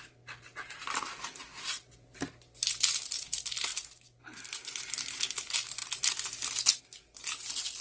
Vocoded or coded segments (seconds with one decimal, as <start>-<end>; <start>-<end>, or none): 3.7-5.2